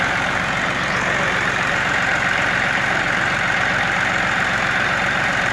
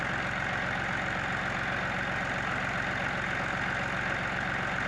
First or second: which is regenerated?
first